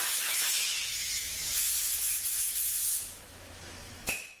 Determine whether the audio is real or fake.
fake